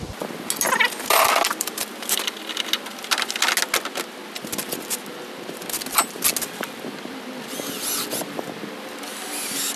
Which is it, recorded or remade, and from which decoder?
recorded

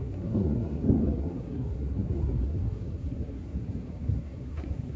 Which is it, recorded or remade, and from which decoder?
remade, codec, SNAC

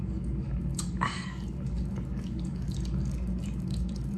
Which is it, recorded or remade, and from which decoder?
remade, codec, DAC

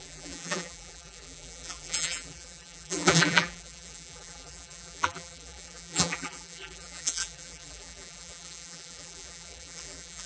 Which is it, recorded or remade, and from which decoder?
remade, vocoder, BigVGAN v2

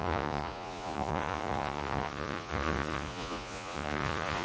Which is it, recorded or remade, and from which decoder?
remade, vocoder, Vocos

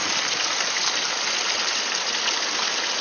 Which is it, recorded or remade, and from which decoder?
recorded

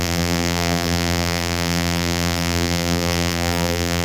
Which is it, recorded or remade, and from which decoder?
remade, vocoder, BigVGAN v2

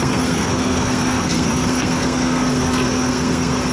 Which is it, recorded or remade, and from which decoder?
remade, codec, SNAC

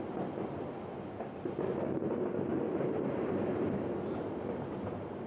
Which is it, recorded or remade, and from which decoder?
recorded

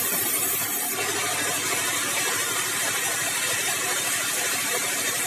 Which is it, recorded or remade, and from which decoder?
remade, vocoder, BigVGAN v2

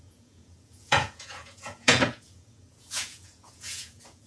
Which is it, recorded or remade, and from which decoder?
remade, vocoder, Vocos